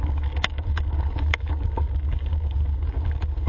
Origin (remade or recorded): remade